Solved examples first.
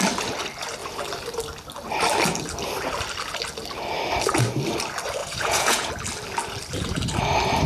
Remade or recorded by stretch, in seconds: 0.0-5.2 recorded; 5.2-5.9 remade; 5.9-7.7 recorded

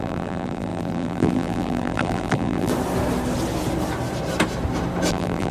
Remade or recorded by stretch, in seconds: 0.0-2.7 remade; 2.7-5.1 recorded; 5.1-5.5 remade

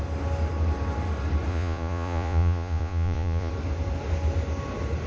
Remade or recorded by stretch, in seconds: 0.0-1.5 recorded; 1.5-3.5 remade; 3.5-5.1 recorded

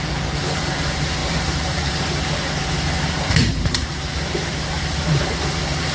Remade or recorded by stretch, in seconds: 0.0-1.2 recorded; 1.2-2.0 remade; 2.0-3.4 recorded; 3.4-4.7 remade; 4.7-5.9 recorded